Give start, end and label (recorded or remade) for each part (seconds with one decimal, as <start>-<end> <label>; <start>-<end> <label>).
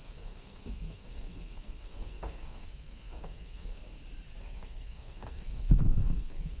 0.0-3.8 remade; 3.8-4.4 recorded; 4.4-6.6 remade